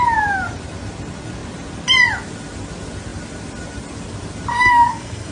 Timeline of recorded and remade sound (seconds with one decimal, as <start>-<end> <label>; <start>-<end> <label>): 0.0-4.5 recorded; 4.5-5.3 remade